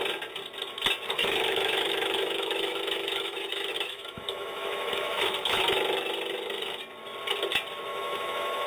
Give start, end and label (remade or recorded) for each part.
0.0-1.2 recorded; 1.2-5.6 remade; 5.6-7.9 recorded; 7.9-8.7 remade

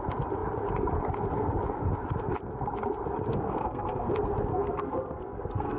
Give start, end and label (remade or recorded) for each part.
0.0-3.3 recorded; 3.3-4.1 remade; 4.1-4.5 recorded; 4.5-5.8 remade

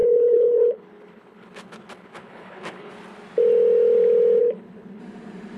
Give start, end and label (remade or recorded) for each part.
0.0-2.9 remade; 2.9-4.4 recorded; 4.4-5.0 remade; 5.0-5.6 recorded

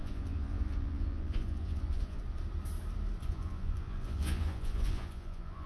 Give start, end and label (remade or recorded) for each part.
0.0-2.2 remade; 2.2-3.2 recorded; 3.2-5.7 remade

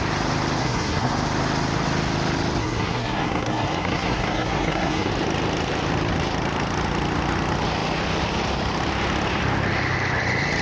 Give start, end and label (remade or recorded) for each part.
0.0-0.6 recorded; 0.6-1.1 remade; 1.1-2.6 recorded; 2.6-5.1 remade; 5.1-10.6 recorded

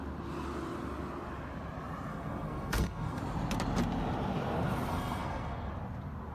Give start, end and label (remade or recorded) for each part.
0.0-2.1 recorded; 2.1-3.2 remade; 3.2-4.9 recorded; 4.9-5.7 remade; 5.7-6.3 recorded

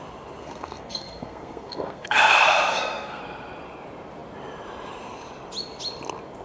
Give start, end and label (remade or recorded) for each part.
0.0-0.4 recorded; 0.4-3.2 remade; 3.2-6.4 recorded